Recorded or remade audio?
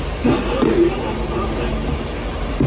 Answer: recorded